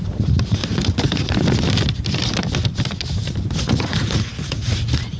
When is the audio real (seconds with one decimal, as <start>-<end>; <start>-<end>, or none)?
0.6-3.6